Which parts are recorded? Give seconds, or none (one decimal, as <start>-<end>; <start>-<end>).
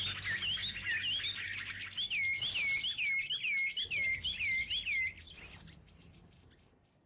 0.0-7.1